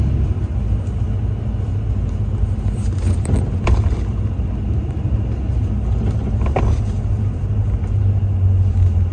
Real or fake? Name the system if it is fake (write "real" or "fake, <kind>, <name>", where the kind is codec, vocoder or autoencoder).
real